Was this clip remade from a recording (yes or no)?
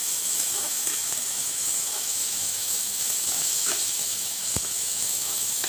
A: yes